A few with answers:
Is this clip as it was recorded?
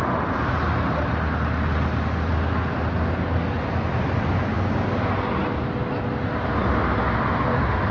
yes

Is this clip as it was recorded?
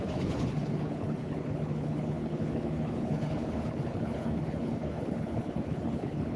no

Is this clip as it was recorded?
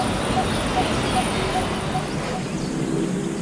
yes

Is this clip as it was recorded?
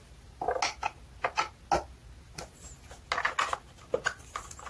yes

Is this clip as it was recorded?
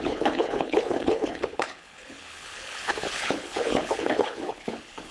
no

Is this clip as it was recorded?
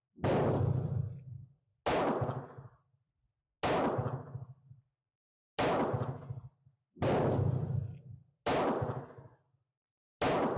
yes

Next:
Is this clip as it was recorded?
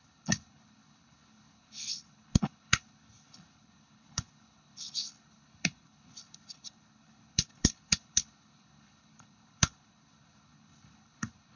no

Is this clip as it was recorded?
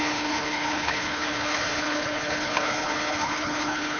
no